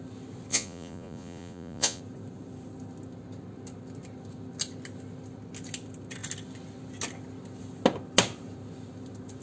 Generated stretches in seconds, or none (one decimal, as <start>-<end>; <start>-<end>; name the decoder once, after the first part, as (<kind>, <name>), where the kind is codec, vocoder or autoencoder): 0.5-2.0 (vocoder, Vocos)